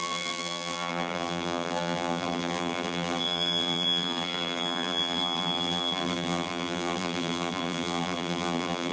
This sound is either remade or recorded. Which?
remade